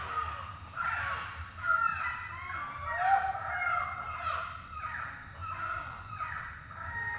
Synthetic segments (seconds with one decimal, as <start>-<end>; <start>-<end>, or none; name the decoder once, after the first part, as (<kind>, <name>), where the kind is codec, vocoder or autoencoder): 5.4-6.4 (vocoder, Vocos)